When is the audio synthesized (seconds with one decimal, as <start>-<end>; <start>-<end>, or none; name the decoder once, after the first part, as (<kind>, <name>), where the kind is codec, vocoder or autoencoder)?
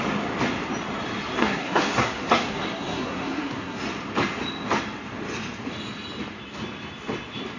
1.4-3.8 (codec, SNAC)